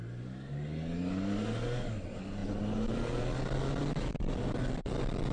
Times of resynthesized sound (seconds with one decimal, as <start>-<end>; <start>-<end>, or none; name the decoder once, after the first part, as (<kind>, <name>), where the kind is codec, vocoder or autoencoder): none